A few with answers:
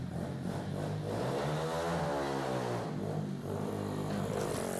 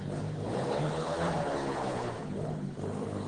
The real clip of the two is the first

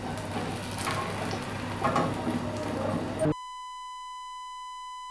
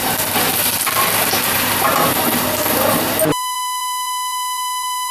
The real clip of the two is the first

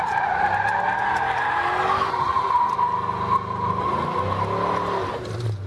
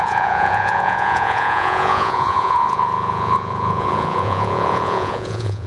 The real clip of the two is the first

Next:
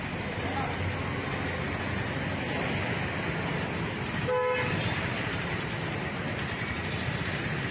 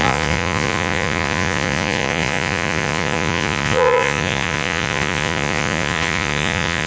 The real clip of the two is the first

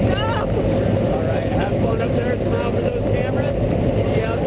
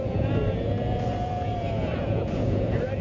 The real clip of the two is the first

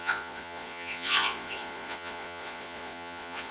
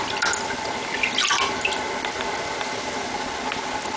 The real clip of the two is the second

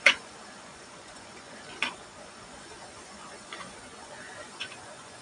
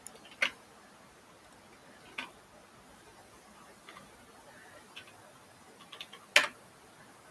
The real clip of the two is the second